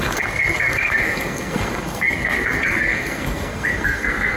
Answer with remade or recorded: remade